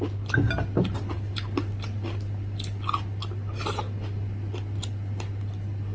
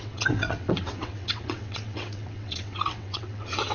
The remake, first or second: second